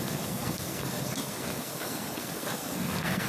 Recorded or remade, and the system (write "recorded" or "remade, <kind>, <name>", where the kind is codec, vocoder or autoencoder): remade, codec, SNAC